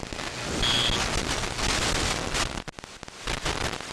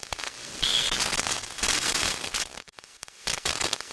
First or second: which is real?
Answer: first